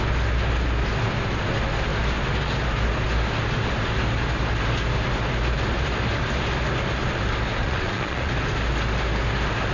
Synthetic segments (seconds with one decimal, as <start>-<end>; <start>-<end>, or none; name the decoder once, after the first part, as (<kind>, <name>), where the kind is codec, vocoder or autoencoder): 7.6-8.3 (vocoder, Vocos)